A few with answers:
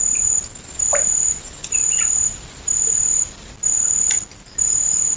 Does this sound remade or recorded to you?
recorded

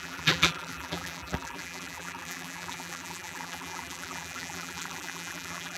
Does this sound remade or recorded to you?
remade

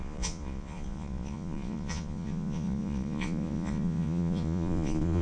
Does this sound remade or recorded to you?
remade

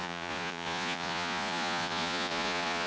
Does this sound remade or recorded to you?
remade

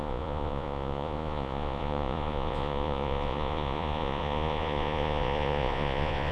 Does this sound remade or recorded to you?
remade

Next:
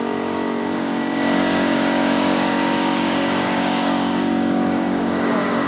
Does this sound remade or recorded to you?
remade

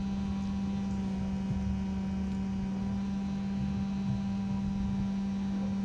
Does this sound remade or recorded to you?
recorded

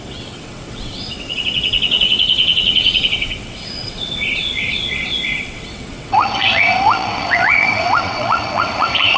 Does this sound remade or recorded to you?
remade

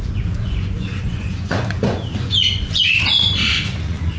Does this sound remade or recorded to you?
remade